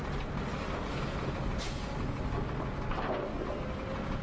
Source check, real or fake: real